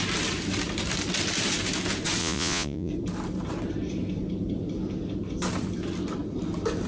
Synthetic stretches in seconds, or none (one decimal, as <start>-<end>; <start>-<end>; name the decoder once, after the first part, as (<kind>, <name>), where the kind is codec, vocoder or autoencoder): 2.2-2.9 (vocoder, Vocos)